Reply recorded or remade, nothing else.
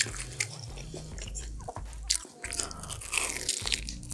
recorded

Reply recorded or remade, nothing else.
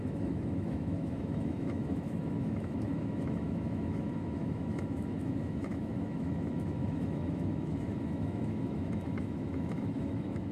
remade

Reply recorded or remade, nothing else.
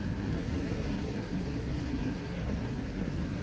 remade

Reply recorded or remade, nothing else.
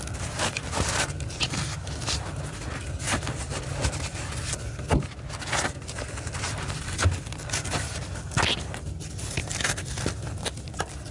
recorded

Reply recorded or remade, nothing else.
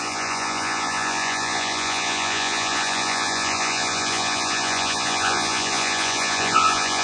remade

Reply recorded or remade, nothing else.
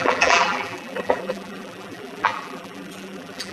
remade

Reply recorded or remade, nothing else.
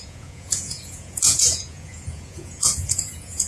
remade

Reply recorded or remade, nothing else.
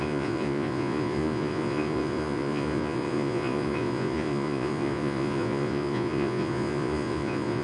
remade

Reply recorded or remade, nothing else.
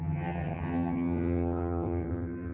remade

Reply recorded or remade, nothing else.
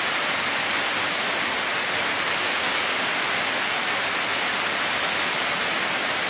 recorded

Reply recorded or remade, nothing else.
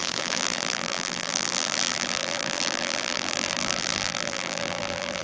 remade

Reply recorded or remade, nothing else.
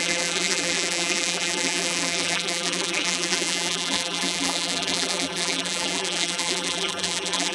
remade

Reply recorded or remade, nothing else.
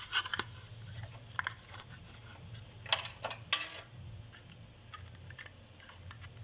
recorded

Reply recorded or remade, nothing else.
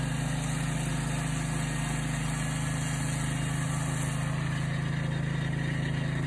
recorded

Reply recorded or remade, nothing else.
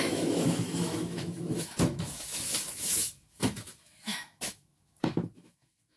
remade